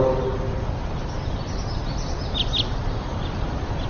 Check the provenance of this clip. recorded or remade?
recorded